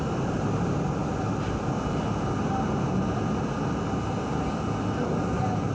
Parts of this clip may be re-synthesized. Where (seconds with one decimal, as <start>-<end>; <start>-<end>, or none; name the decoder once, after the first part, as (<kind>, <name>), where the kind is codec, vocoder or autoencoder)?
none